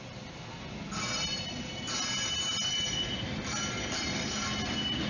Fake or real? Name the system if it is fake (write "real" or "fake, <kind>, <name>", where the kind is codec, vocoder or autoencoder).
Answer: real